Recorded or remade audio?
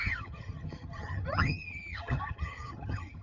remade